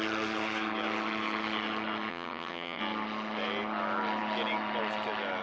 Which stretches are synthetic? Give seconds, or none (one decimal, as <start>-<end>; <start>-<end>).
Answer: 2.1-2.8